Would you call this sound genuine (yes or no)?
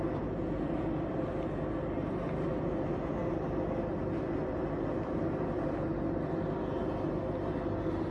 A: yes